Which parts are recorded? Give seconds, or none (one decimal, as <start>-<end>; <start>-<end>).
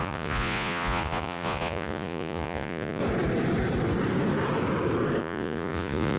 3.0-5.2